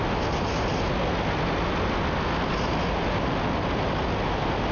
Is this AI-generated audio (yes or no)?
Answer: no